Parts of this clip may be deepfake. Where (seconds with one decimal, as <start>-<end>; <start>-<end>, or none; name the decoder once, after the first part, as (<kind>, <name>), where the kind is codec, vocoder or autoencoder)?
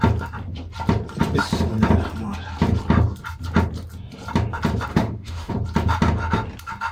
4.9-5.5 (autoencoder, DAC-VAE)